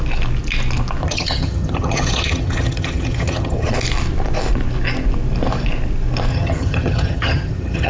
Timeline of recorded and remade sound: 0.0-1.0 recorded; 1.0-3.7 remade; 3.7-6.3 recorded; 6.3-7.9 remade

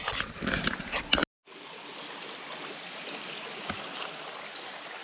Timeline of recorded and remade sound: 0.0-5.0 recorded

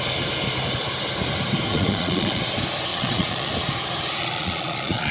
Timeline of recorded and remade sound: 0.0-1.7 recorded; 1.7-2.4 remade; 2.4-2.9 recorded; 2.9-3.5 remade; 3.5-4.2 recorded; 4.2-5.1 remade

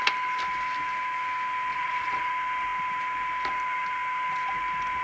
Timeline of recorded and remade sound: 0.0-1.7 recorded; 1.7-2.3 remade; 2.3-5.0 recorded

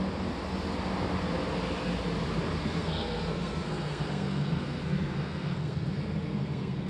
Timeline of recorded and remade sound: 0.0-2.6 recorded; 2.6-6.9 remade

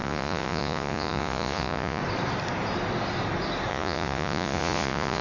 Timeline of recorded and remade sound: 0.0-2.0 remade; 2.0-3.7 recorded; 3.7-5.2 remade

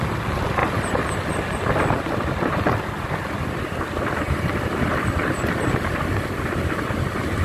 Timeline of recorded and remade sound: 0.0-7.4 recorded